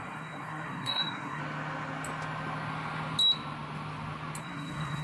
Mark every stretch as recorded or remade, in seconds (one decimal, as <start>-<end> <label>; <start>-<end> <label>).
0.0-1.4 remade; 1.4-4.4 recorded; 4.4-5.0 remade